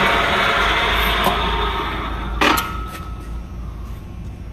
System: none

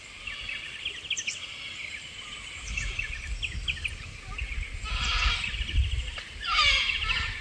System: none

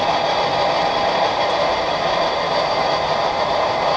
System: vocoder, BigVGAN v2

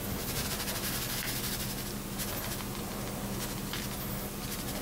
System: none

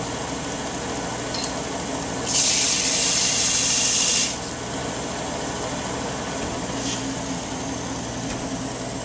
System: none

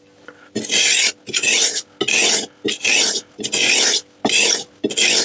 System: none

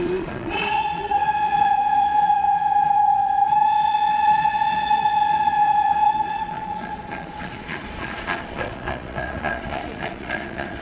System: vocoder, Vocos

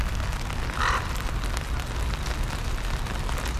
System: none